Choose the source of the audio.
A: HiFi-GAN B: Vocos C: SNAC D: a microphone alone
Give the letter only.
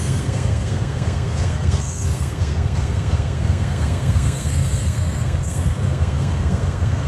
C